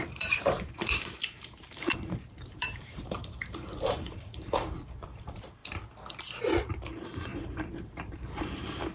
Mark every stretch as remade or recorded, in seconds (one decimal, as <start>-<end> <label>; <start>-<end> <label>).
0.0-5.6 remade; 5.6-6.4 recorded; 6.4-8.9 remade